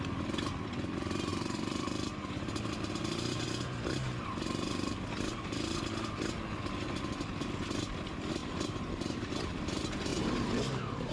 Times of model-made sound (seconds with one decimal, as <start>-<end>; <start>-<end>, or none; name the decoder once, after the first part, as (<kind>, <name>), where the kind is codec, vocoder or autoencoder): 1.3-5.8 (vocoder, BigVGAN v2); 8.4-9.3; 10.1-11.1